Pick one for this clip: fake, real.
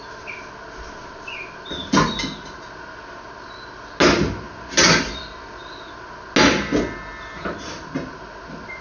real